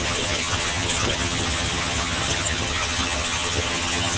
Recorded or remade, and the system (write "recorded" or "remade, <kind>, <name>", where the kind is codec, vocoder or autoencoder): remade, vocoder, HiFi-GAN